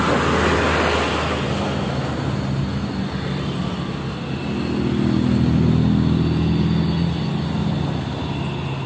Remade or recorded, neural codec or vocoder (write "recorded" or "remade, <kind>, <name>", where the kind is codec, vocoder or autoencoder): recorded